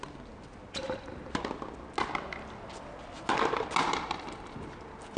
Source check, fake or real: real